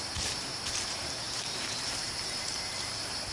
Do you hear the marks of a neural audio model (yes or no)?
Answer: yes